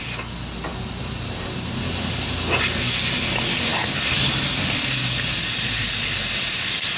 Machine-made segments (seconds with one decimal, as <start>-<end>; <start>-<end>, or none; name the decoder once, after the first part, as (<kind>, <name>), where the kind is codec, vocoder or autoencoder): 0.7-1.7 (vocoder, BigVGAN v2)